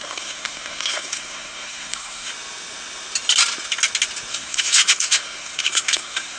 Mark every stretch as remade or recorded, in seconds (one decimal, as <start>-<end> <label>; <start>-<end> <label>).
0.0-2.3 remade; 2.3-4.3 recorded; 4.3-6.4 remade